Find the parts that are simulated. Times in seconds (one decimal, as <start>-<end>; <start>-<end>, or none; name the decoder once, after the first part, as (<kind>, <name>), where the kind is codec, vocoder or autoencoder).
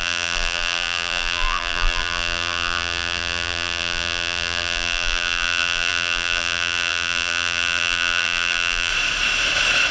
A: 0.0-8.9 (vocoder, BigVGAN v2)